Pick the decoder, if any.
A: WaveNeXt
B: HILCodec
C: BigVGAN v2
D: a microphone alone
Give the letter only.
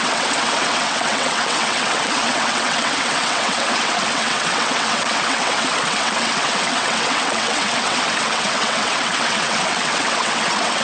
A